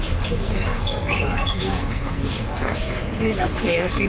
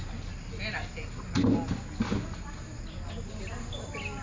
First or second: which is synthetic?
first